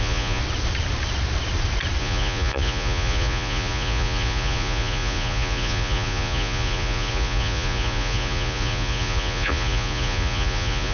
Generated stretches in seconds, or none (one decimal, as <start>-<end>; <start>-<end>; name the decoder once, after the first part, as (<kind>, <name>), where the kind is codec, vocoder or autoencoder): 0.0-0.4 (vocoder, Vocos); 2.0-10.9